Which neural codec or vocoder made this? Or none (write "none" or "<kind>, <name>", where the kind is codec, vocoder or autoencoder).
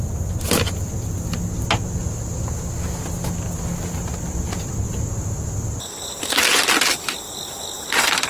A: none